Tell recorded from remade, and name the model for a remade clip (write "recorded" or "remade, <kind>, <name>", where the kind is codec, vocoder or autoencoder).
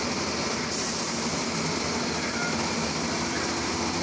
recorded